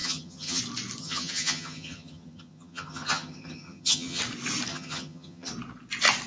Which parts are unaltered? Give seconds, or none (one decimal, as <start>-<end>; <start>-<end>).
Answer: 0.6-1.0; 4.2-4.7; 5.5-6.3